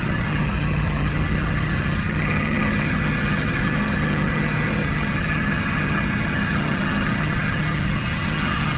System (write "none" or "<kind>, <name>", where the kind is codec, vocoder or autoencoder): vocoder, HiFi-GAN